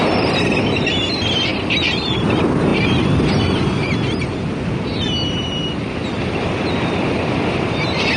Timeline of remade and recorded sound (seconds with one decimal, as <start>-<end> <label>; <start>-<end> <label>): 0.0-8.2 remade